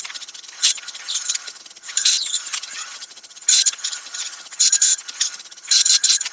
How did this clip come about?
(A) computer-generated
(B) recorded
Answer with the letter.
A